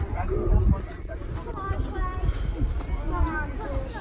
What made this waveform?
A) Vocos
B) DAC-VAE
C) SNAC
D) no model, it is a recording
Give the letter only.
D